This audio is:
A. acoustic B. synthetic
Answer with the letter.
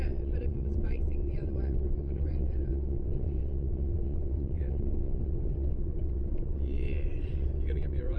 B